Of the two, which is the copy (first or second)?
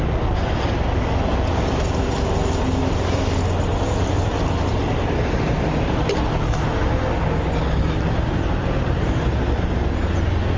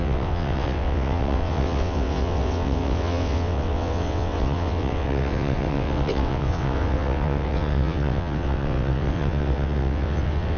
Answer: second